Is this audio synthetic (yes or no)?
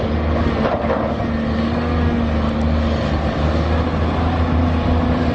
no